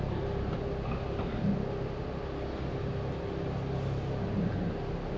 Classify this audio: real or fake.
real